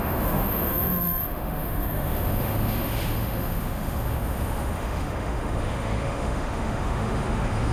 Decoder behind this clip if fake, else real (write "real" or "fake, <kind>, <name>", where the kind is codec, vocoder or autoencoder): fake, autoencoder, DAC-VAE